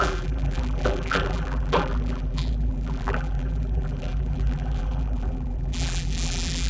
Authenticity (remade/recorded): remade